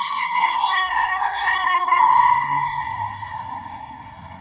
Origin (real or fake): fake